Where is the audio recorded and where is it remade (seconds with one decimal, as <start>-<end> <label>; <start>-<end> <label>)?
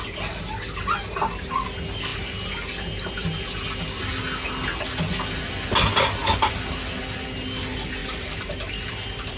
0.0-8.0 recorded; 8.0-9.4 remade